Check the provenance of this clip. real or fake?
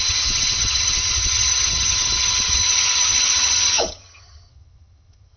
fake